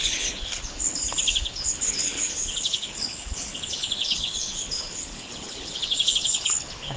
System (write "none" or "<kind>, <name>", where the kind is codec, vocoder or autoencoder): codec, HILCodec